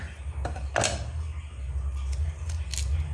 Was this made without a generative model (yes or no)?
yes